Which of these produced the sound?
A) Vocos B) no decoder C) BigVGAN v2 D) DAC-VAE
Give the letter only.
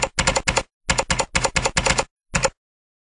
B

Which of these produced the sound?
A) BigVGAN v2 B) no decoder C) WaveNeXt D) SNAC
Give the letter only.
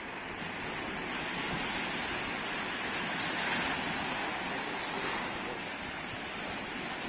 B